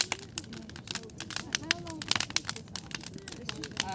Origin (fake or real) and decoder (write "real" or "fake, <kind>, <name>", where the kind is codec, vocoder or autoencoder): real